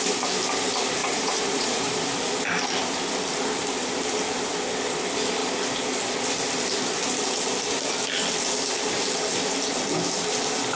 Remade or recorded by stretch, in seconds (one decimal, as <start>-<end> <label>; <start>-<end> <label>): 0.0-1.0 recorded; 1.0-1.9 remade; 1.9-10.7 recorded